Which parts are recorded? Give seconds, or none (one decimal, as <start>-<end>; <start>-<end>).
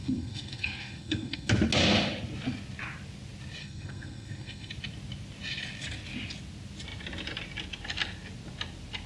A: 1.5-3.6; 4.7-9.1